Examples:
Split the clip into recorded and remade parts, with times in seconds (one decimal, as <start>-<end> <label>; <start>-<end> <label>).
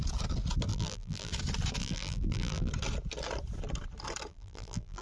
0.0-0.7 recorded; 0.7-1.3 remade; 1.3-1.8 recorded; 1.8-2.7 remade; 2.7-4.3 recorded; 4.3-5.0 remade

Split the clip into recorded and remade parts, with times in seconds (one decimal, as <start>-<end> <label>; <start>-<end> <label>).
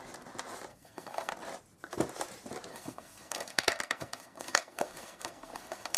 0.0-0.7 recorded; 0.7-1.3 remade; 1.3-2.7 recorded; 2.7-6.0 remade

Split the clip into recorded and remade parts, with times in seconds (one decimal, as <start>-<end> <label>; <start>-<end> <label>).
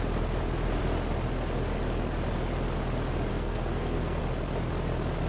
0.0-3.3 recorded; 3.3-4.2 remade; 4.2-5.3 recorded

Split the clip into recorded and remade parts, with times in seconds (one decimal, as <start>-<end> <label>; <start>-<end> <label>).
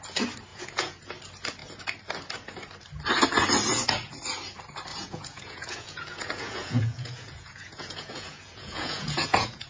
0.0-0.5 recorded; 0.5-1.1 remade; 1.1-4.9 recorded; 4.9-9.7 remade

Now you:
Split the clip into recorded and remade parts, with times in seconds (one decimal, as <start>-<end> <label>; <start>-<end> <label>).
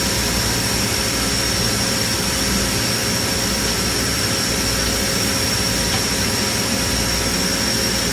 0.0-8.1 recorded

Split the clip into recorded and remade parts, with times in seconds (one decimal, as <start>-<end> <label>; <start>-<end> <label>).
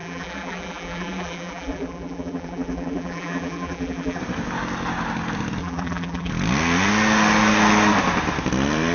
0.0-4.2 remade; 4.2-5.6 recorded; 5.6-6.3 remade; 6.3-8.9 recorded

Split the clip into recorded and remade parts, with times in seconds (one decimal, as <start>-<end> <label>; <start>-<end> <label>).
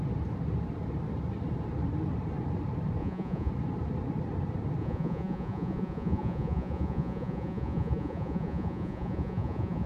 0.0-3.0 recorded; 3.0-3.5 remade; 3.5-4.8 recorded; 4.8-9.9 remade